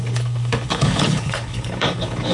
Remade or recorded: remade